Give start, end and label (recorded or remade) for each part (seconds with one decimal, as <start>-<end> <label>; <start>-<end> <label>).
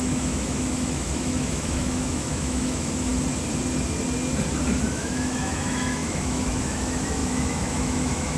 0.0-3.1 remade; 3.1-4.9 recorded; 4.9-8.4 remade